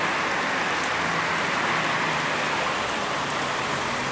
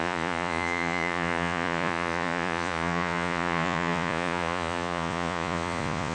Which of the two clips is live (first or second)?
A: first